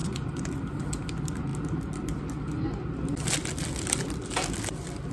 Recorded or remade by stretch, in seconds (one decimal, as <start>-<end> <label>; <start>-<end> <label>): 0.0-0.5 remade; 0.5-5.1 recorded